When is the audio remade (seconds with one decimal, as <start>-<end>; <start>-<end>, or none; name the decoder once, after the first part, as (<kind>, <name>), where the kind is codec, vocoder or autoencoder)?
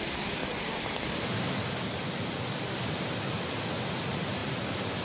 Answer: 0.4-3.2 (vocoder, BigVGAN v2); 4.4-5.0